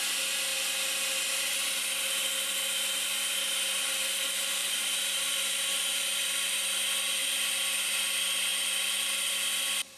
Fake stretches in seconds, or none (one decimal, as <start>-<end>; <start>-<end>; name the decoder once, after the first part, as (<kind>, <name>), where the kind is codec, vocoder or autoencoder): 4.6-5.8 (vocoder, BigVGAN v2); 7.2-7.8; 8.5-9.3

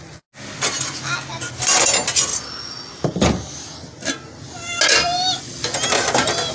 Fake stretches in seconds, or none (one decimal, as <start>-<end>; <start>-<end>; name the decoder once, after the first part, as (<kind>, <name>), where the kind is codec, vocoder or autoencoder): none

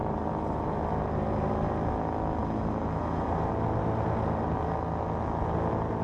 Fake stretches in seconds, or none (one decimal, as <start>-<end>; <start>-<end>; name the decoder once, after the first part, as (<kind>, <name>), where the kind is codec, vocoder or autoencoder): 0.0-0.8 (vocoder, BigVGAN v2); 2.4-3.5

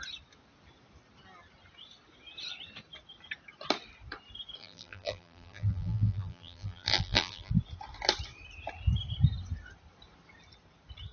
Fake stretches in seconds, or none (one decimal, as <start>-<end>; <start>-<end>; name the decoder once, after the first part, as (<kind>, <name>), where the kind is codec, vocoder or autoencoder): 4.6-7.5 (vocoder, BigVGAN v2)

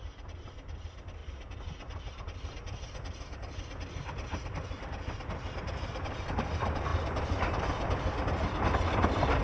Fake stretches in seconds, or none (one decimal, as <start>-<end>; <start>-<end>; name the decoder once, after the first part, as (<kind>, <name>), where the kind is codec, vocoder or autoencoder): 0.0-9.4 (vocoder, BigVGAN v2)

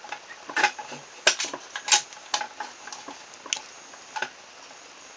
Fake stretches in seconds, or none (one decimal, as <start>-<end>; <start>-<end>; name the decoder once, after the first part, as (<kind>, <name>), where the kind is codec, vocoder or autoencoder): 0.0-0.8 (vocoder, BigVGAN v2); 3.6-5.2